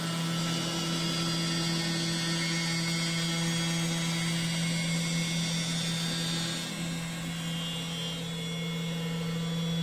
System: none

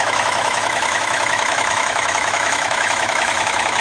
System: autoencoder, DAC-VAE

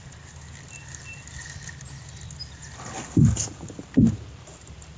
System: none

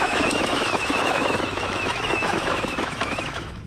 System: autoencoder, DAC-VAE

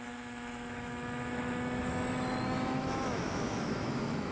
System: autoencoder, DAC-VAE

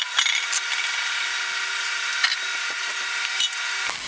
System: none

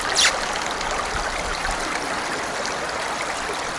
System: none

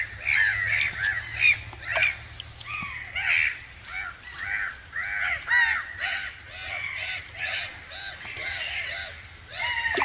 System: none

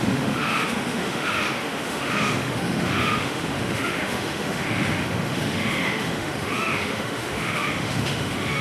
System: autoencoder, DAC-VAE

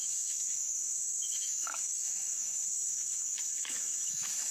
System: autoencoder, DAC-VAE